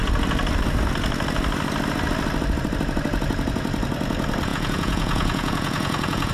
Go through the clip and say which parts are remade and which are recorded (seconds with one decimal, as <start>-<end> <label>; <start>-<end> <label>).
0.0-4.5 recorded; 4.5-6.3 remade